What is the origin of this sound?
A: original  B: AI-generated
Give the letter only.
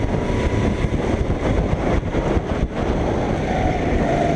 A